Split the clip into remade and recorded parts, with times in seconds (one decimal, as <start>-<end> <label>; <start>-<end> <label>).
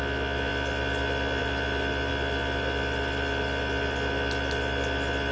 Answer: 0.0-5.3 recorded